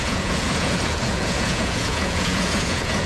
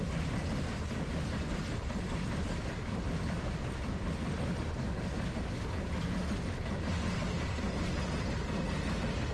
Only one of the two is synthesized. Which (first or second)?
first